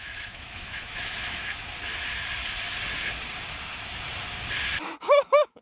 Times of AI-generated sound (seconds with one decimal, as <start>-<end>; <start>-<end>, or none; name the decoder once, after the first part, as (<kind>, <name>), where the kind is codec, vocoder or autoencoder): 0.0-1.6 (autoencoder, DAC-VAE); 5.0-5.6